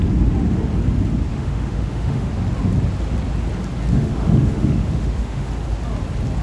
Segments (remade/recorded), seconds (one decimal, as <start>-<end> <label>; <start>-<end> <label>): 0.0-1.3 recorded; 1.3-2.3 remade; 2.3-3.9 recorded; 3.9-5.5 remade; 5.5-6.4 recorded